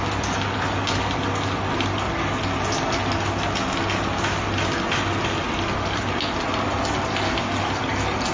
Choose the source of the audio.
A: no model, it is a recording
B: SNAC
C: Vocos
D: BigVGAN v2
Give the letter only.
A